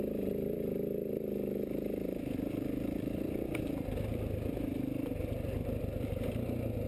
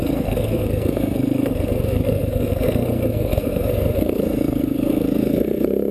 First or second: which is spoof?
second